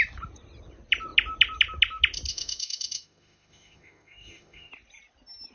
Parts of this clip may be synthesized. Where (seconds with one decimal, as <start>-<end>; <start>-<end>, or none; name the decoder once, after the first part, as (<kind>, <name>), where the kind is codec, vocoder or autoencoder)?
2.3-4.7 (autoencoder, DAC-VAE)